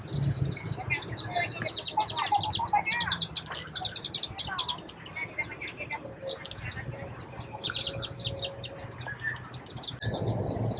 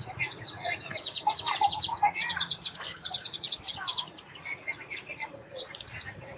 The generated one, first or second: second